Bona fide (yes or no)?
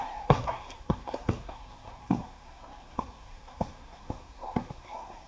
no